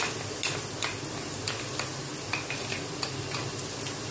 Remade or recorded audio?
recorded